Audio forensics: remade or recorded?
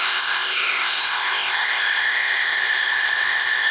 remade